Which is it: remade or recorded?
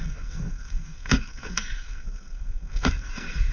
remade